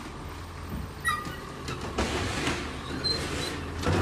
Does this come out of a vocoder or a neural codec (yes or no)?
no